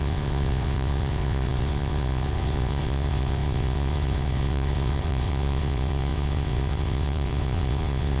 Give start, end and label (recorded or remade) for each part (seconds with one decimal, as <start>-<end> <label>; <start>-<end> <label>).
0.0-8.2 remade